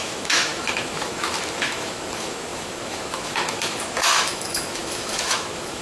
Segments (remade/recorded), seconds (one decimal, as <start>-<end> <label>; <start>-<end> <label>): 0.0-5.8 remade